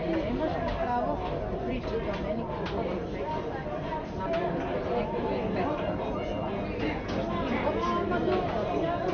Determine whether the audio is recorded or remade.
recorded